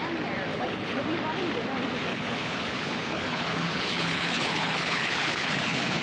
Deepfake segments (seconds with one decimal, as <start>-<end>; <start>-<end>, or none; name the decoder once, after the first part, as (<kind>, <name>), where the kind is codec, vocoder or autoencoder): 0.5-1.0 (codec, HILCodec); 2.1-6.0